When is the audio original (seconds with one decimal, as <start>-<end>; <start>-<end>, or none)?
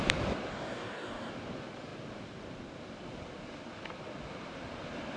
0.0-0.5; 1.3-5.2